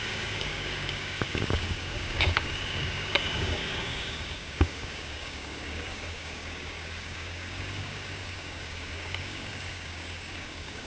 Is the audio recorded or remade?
remade